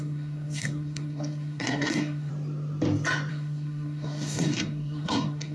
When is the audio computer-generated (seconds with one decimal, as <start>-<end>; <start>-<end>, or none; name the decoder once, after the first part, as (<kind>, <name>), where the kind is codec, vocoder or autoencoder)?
0.0-2.3 (codec, SNAC); 3.3-5.5